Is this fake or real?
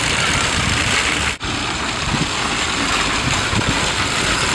real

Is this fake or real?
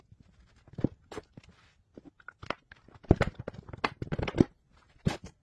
real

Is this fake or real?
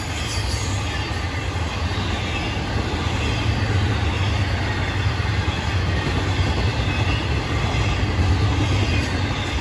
real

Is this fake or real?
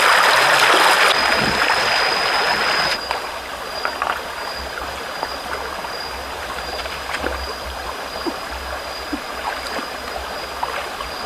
real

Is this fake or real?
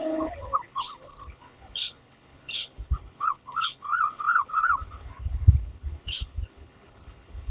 fake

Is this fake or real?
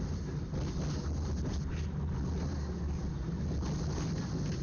real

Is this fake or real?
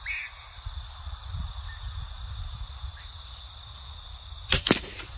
real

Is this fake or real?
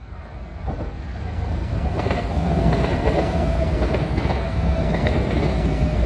fake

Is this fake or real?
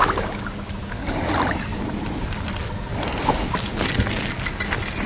real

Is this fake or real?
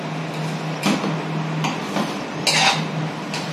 real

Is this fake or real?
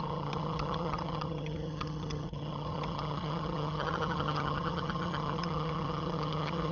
fake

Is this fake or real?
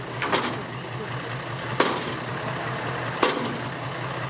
real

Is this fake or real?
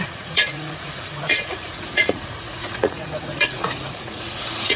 fake